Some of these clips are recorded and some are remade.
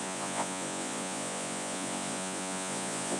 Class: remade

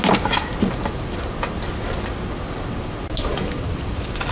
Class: recorded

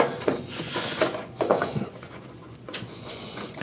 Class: remade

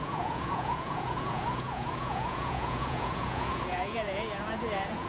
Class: remade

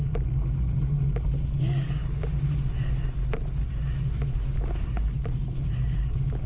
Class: recorded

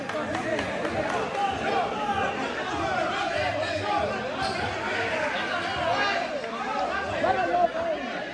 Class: recorded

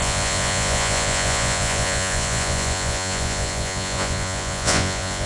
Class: remade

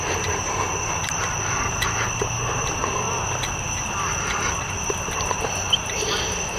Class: recorded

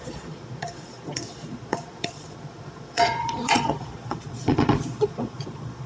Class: remade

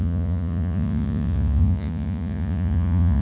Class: remade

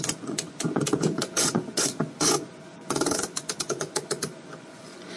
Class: remade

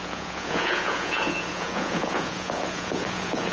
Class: remade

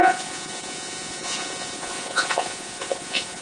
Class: remade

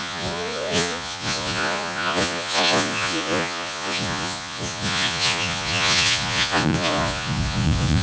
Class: remade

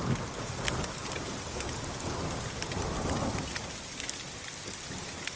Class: recorded